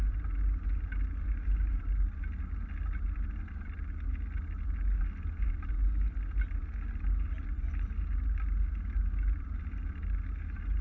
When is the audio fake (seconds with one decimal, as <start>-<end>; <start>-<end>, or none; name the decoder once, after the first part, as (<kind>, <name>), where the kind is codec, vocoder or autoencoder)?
none